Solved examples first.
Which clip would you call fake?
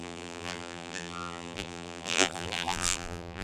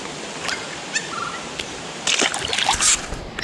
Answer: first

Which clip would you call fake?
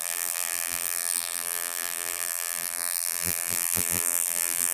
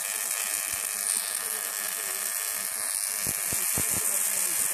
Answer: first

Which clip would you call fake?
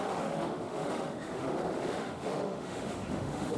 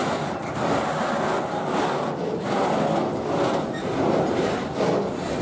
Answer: first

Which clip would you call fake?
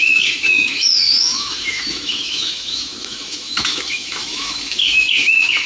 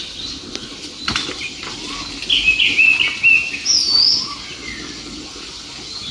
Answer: first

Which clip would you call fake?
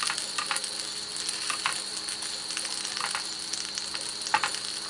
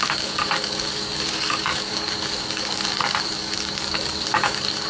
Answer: second